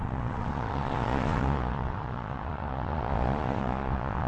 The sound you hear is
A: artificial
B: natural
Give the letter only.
A